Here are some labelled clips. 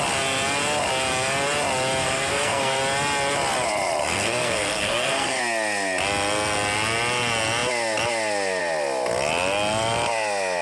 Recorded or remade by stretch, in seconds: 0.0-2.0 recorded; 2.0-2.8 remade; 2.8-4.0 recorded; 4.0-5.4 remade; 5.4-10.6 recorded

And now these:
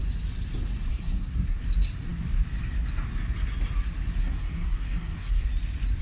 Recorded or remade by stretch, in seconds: 0.0-0.9 recorded; 0.9-1.6 remade; 1.6-4.2 recorded; 4.2-5.5 remade; 5.5-6.0 recorded

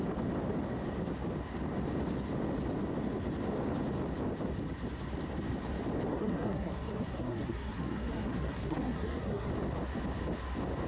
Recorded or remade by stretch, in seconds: 0.0-6.1 recorded; 6.1-9.5 remade; 9.5-10.9 recorded